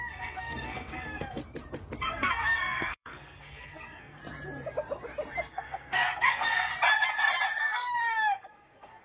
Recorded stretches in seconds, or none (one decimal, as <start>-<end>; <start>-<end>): 1.4-2.0; 4.2-5.5; 6.7-7.6